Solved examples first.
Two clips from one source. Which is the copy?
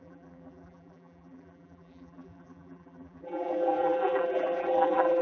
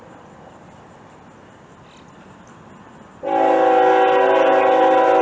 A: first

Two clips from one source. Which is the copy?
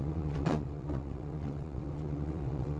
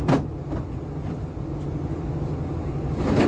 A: first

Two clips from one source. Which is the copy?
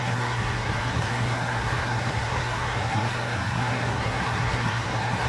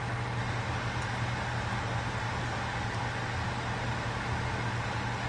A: first